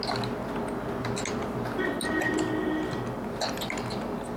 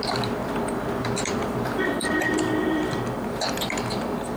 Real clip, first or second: first